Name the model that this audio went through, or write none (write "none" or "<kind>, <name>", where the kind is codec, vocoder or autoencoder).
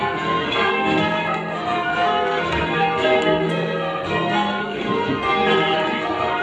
codec, SNAC